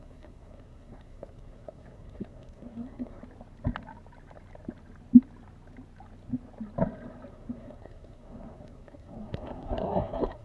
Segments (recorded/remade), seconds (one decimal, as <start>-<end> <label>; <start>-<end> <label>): 0.0-3.2 remade; 3.2-7.3 recorded; 7.3-10.4 remade